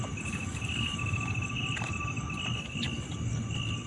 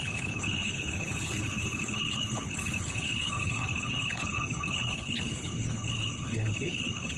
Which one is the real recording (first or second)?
first